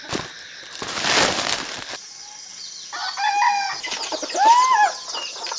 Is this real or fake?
real